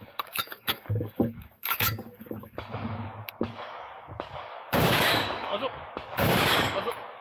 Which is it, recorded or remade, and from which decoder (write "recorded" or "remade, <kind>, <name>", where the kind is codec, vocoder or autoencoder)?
remade, codec, DAC